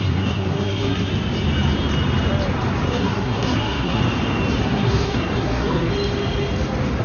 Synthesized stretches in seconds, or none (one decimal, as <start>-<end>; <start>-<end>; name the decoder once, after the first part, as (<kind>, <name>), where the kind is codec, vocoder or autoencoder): 0.0-1.1 (codec, SNAC); 2.9-4.0; 4.6-5.9